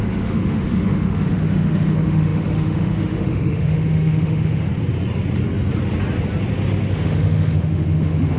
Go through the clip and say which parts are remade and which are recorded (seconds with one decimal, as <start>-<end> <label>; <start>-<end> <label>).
0.0-4.7 remade; 4.7-6.9 recorded; 6.9-8.4 remade